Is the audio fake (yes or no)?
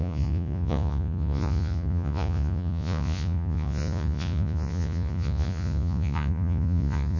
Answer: yes